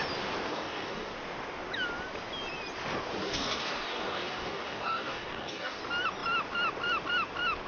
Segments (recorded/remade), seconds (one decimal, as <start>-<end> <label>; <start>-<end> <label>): 0.0-0.5 recorded; 0.5-1.1 remade; 1.1-3.2 recorded; 3.2-5.8 remade; 5.8-7.7 recorded